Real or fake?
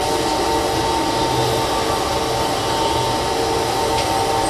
real